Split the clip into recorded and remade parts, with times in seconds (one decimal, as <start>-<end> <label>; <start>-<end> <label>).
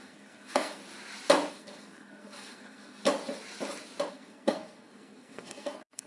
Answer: 0.0-0.8 remade; 0.8-1.5 recorded; 1.5-3.0 remade; 3.0-4.1 recorded; 4.1-6.1 remade